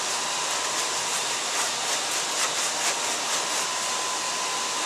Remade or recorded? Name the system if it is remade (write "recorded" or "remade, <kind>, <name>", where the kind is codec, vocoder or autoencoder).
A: recorded